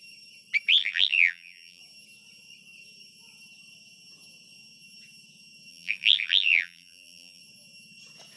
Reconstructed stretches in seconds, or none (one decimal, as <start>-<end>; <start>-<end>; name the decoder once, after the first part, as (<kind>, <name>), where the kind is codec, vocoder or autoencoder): 0.8-1.8 (vocoder, BigVGAN v2); 5.7-7.4